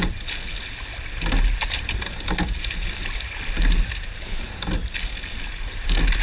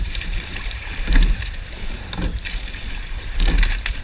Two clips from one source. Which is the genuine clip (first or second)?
first